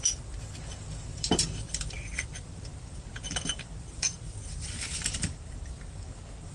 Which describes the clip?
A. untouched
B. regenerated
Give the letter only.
B